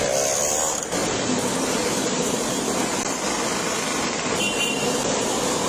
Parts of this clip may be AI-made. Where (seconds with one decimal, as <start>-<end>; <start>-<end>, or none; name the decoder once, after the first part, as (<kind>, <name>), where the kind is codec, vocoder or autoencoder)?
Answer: 0.0-1.0 (vocoder, BigVGAN v2); 2.1-5.7